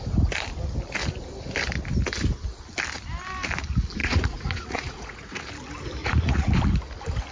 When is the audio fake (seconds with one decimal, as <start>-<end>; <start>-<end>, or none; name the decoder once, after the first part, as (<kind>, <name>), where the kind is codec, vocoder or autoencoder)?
4.0-5.4 (vocoder, Vocos); 6.0-6.5